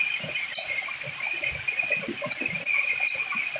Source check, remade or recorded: recorded